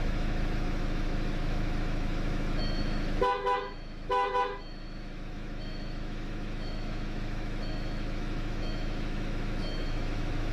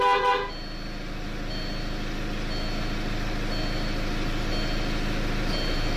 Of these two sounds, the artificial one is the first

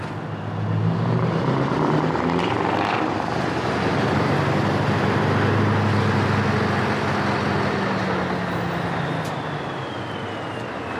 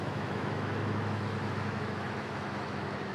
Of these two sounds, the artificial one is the second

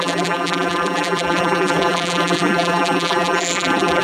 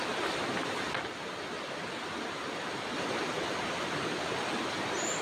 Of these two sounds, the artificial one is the first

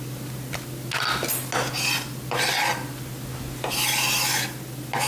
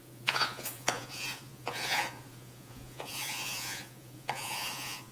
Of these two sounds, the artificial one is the second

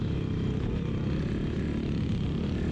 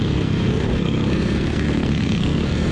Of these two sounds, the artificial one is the second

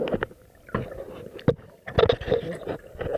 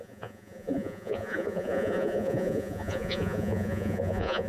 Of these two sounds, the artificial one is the second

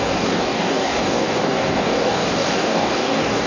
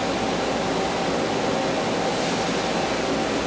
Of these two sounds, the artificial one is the first